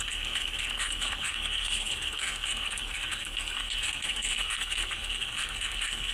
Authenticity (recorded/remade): remade